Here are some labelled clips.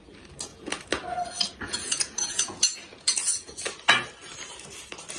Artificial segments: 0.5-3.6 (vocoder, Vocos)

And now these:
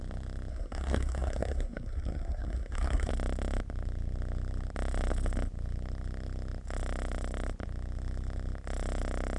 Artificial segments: 0.5-3.1 (codec, SNAC)

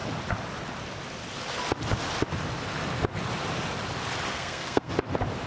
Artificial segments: 4.3-4.9 (codec, SNAC)

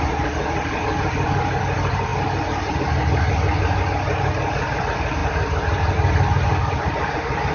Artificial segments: none

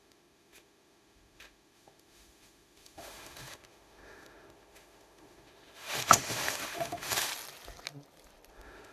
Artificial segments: 0.0-7.3 (autoencoder, DAC-VAE); 8.5-8.9